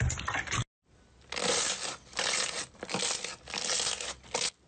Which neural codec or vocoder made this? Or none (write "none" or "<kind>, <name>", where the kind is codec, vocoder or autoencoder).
none